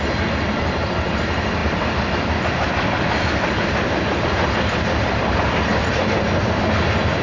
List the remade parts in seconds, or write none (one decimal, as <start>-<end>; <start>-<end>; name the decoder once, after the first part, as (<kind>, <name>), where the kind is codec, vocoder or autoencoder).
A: none